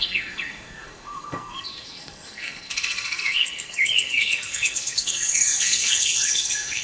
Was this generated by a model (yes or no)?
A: yes